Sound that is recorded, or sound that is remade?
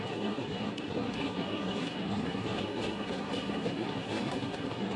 remade